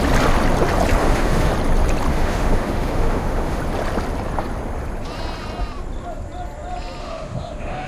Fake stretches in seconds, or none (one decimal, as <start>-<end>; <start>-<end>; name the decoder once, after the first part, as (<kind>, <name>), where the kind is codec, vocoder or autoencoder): 1.0-1.5 (autoencoder, DAC-VAE); 2.1-3.6; 7.0-7.9